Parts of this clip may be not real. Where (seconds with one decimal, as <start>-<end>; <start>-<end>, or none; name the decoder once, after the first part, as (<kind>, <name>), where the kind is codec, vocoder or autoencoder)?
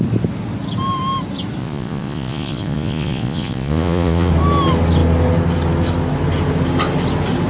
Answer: 1.6-4.3 (vocoder, Vocos)